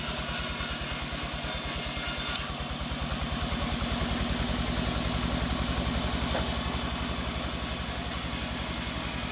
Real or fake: real